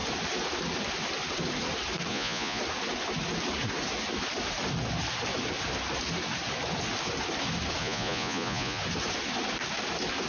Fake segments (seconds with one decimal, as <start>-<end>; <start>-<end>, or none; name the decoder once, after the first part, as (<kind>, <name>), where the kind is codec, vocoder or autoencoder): 2.1-2.6 (vocoder, Vocos); 7.8-8.8

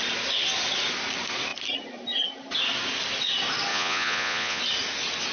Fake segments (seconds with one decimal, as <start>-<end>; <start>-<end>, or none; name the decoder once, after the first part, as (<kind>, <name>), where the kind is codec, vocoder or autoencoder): 3.7-4.6 (vocoder, Vocos)

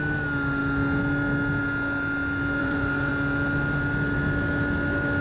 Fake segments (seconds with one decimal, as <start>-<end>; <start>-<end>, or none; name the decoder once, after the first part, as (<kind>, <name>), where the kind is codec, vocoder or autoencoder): 2.6-3.1 (vocoder, Vocos)

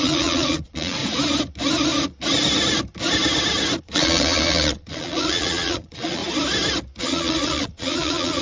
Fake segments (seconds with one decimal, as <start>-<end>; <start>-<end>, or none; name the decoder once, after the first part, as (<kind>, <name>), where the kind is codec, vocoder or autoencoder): 0.0-1.0 (vocoder, Vocos); 3.8-6.2; 7.0-8.4

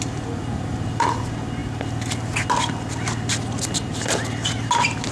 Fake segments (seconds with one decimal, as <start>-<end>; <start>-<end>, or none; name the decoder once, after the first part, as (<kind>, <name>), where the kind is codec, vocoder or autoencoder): none

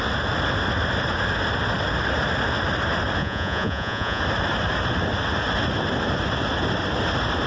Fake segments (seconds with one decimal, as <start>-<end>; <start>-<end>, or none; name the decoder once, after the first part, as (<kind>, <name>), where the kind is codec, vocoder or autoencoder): 3.2-4.2 (vocoder, Vocos)